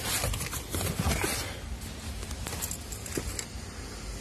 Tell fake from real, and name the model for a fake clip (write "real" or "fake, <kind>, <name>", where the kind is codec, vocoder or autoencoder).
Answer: real